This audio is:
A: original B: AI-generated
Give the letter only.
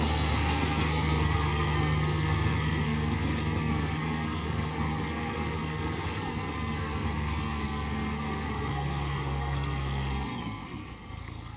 B